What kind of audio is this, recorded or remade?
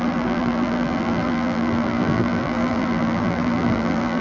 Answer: remade